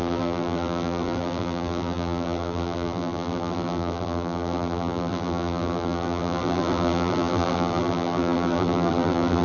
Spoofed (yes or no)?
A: yes